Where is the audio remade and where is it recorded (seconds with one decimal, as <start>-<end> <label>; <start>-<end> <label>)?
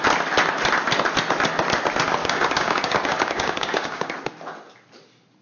0.0-2.2 recorded; 2.2-4.1 remade; 4.1-5.4 recorded